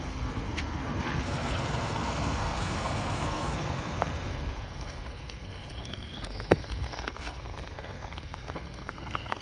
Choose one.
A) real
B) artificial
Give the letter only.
B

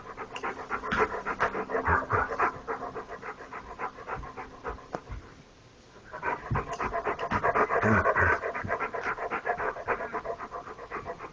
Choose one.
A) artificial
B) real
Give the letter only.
B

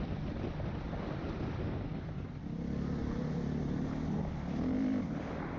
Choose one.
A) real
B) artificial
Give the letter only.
A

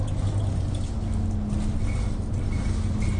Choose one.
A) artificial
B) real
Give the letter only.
B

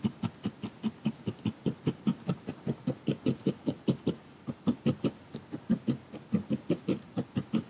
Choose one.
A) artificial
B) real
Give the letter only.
B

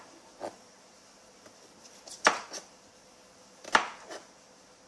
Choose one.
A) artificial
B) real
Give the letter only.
B